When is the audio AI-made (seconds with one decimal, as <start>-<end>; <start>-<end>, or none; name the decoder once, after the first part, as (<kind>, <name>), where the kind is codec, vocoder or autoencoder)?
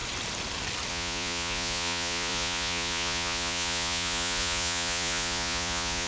0.9-6.1 (vocoder, Vocos)